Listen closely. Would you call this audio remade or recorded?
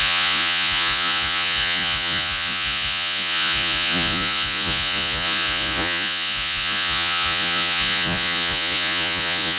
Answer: remade